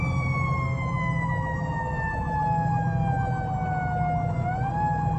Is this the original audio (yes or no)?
yes